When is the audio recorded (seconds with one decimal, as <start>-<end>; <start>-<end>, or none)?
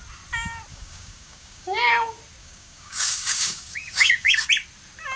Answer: 0.0-0.7; 1.9-2.4; 4.5-5.2